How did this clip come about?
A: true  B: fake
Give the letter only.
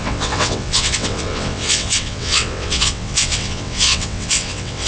B